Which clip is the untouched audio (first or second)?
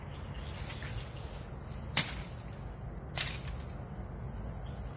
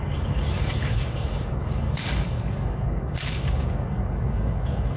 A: first